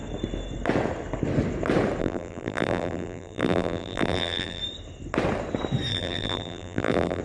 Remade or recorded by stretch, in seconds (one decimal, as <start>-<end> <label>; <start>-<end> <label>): 0.0-2.0 recorded; 2.0-4.6 remade; 4.6-5.9 recorded; 5.9-7.2 remade